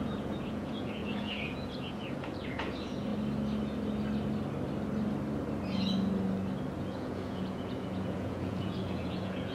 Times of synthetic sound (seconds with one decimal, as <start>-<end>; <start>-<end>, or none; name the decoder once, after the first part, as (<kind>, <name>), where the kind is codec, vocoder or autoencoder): 0.0-3.1 (vocoder, Vocos); 6.8-9.5